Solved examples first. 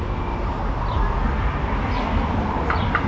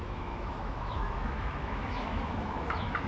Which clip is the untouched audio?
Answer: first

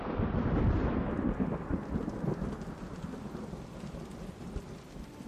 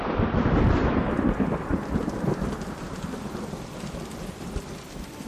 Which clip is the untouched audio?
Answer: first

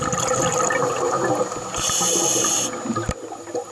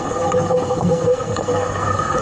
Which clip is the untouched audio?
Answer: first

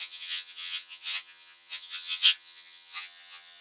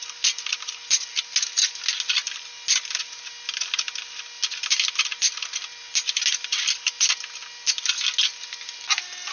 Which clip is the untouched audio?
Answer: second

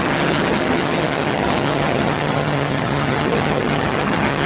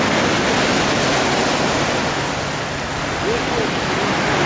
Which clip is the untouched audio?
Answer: second